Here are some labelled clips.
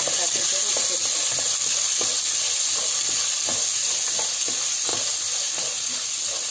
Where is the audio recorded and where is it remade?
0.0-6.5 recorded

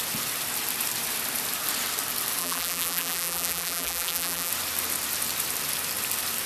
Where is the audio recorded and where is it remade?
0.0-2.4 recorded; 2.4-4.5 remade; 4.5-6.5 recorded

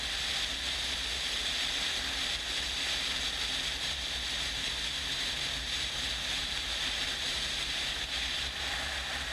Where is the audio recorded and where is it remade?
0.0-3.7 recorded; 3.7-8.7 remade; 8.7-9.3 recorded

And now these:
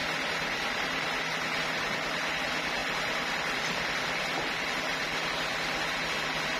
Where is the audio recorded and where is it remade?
0.0-6.6 recorded

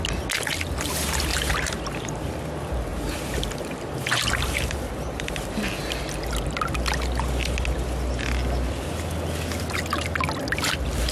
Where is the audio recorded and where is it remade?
0.0-1.3 recorded; 1.3-2.3 remade; 2.3-2.9 recorded; 2.9-6.0 remade; 6.0-11.1 recorded

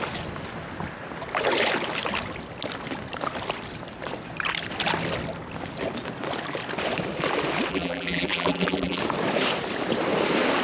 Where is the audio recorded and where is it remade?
0.0-7.7 recorded; 7.7-9.0 remade; 9.0-10.6 recorded

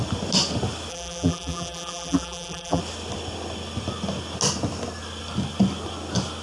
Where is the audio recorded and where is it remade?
0.0-0.9 recorded; 0.9-2.8 remade; 2.8-6.4 recorded